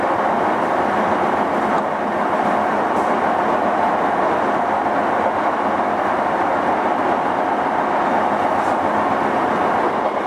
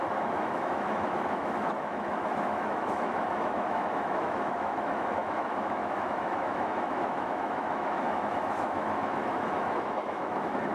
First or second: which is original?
first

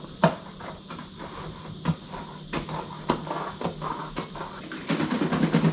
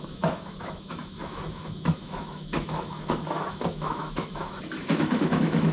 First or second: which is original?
first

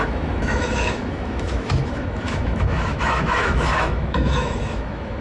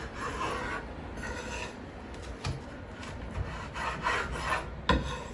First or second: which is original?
second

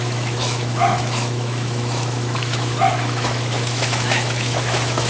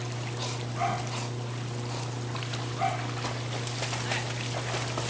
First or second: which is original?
second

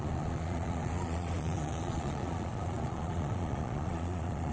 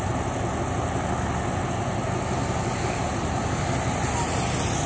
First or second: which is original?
second